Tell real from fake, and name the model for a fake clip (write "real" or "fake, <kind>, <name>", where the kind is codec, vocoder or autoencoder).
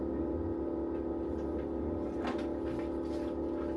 real